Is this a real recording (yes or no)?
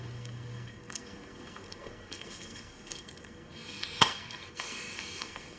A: no